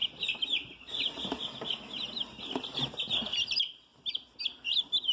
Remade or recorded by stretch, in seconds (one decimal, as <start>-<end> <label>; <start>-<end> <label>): 0.0-5.1 recorded